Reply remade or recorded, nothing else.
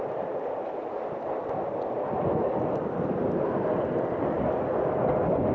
recorded